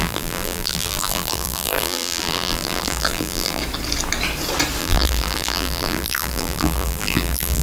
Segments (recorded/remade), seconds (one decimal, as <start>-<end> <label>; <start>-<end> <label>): 0.0-3.6 remade; 3.6-4.8 recorded; 4.8-7.6 remade